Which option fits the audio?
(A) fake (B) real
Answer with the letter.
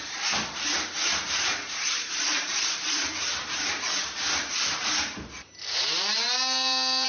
A